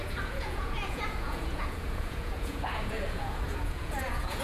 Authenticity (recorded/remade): remade